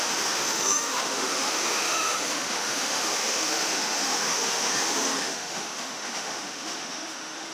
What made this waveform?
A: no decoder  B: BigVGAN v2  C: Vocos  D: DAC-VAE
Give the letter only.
D